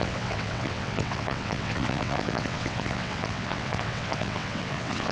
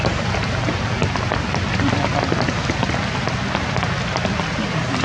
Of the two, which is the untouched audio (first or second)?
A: second